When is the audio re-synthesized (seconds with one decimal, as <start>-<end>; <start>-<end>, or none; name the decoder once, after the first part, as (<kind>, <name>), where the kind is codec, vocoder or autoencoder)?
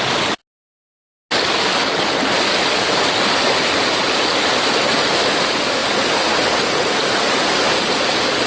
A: none